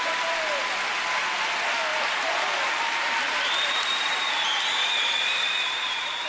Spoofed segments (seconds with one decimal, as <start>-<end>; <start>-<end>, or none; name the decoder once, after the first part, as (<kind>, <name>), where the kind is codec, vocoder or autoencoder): 1.9-5.2 (vocoder, BigVGAN v2)

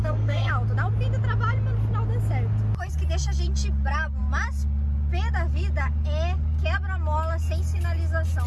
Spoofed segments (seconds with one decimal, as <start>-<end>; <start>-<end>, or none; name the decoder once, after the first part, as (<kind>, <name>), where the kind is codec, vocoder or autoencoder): 0.0-0.5 (codec, SNAC)

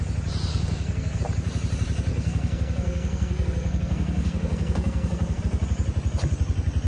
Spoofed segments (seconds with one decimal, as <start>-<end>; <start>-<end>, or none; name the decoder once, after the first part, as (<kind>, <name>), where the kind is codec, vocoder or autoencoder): 0.5-1.2 (codec, SNAC); 2.1-5.4

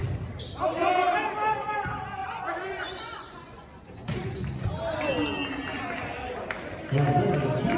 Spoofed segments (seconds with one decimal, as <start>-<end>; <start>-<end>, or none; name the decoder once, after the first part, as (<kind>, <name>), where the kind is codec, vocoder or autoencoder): 2.2-4.7 (vocoder, Vocos)

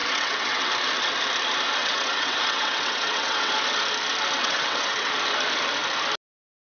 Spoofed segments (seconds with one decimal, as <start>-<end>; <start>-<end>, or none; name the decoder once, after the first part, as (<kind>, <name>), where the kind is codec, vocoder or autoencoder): 0.0-0.7 (vocoder, WaveNeXt); 1.8-3.5; 4.4-5.1

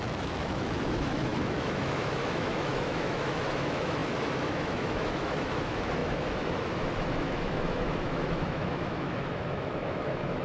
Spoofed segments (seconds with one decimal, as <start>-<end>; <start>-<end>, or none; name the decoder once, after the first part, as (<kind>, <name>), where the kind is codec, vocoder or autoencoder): 0.0-10.4 (autoencoder, DAC-VAE)

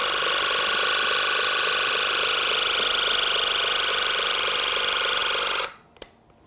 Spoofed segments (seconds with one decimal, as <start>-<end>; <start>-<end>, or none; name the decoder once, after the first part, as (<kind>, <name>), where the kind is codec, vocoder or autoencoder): 3.9-5.2 (vocoder, BigVGAN v2)